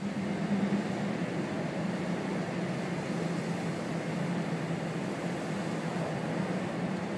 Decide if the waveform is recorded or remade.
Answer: recorded